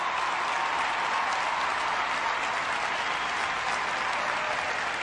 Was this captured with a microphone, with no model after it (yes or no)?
yes